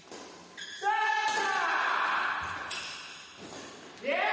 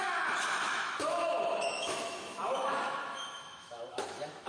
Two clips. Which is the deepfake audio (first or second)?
second